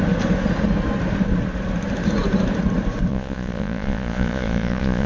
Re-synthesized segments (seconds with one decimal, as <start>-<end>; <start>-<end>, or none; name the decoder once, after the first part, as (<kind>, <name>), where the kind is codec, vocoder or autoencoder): 3.1-5.1 (vocoder, Vocos)